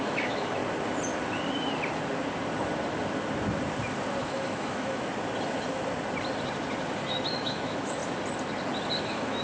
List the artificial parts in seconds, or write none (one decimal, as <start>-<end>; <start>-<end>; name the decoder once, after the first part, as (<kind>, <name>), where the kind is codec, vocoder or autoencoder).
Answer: 0.0-0.6 (autoencoder, DAC-VAE); 4.2-5.1; 7.3-8.0; 9.0-9.4